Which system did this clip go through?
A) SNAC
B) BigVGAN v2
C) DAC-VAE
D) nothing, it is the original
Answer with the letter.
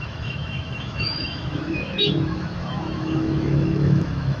C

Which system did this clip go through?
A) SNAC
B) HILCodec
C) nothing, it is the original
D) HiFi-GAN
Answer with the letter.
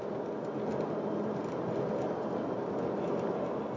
C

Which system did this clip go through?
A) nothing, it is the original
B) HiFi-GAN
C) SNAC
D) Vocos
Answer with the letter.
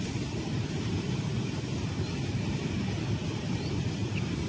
A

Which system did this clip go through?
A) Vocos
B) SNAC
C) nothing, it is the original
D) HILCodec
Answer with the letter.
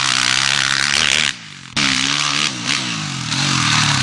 C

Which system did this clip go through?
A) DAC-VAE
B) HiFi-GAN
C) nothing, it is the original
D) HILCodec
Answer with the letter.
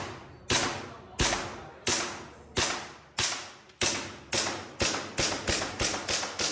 C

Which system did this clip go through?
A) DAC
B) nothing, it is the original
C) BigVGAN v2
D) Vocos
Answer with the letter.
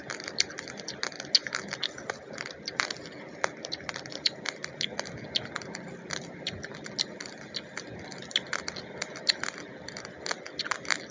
B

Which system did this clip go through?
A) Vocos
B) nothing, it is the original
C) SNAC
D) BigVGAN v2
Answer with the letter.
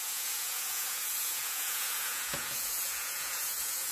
A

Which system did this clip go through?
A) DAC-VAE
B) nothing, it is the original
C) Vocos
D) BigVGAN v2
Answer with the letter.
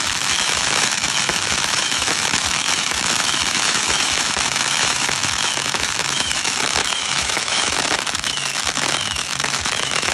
A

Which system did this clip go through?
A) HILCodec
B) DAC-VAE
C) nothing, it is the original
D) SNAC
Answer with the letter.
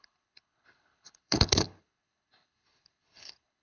A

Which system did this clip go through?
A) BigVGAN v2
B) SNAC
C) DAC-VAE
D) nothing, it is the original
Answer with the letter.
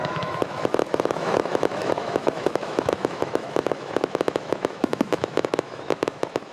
C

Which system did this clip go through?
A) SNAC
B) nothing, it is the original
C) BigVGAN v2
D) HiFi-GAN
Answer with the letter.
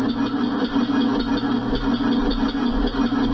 B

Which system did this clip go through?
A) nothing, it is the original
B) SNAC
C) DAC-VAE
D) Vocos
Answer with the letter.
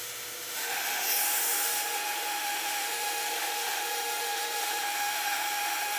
C